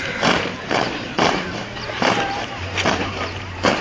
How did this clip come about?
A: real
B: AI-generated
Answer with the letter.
B